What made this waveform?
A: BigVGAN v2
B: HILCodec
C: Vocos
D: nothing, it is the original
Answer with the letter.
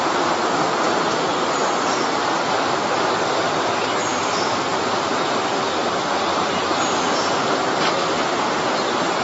A